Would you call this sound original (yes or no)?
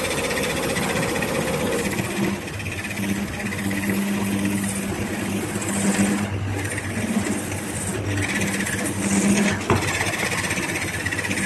yes